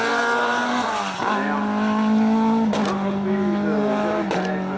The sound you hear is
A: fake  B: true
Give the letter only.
B